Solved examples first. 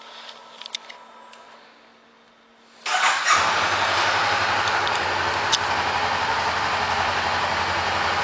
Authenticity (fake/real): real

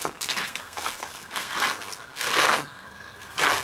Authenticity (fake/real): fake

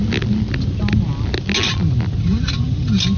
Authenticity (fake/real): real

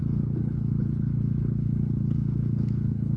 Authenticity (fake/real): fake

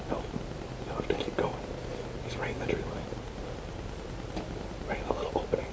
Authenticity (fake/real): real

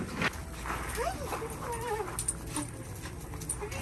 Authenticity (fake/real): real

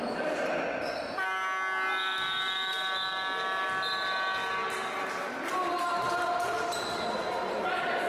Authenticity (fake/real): real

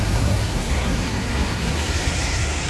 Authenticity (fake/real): fake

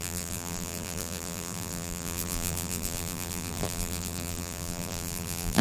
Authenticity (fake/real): fake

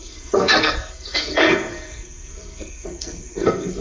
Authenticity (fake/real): fake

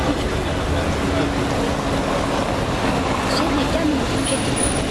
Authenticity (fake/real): real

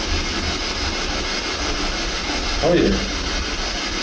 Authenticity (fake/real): real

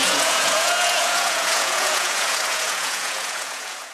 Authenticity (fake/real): fake